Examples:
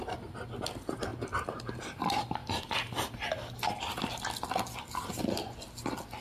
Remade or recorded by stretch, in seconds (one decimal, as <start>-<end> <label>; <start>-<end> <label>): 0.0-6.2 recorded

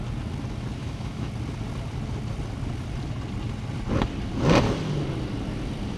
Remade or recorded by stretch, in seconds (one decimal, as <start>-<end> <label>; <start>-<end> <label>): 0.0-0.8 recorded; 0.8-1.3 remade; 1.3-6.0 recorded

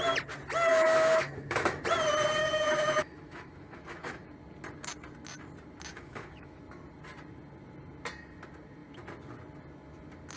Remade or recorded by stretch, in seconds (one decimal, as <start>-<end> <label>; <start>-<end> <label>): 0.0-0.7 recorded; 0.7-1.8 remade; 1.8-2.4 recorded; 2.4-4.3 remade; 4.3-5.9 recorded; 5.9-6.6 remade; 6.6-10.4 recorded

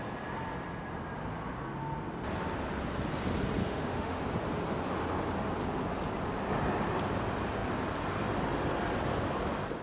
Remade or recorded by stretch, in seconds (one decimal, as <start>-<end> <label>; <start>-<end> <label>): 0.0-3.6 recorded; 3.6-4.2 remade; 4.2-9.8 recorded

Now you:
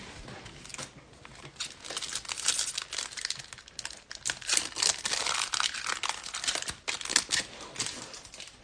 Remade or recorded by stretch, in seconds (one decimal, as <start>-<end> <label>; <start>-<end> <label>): 0.0-8.6 recorded